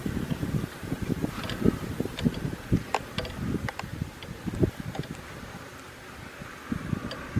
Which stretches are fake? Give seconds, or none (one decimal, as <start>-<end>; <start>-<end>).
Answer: 0.0-2.2; 3.9-4.4